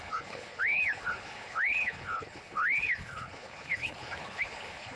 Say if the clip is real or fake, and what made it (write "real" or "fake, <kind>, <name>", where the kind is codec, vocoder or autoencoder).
fake, codec, HILCodec